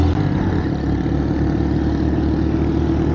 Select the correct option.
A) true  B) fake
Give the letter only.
A